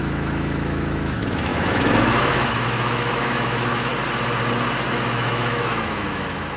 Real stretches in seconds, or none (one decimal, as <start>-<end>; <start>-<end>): 3.9-4.9